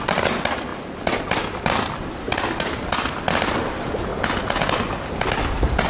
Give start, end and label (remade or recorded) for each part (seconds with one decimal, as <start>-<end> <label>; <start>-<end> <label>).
0.0-5.9 recorded